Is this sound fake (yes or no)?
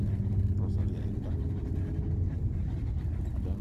no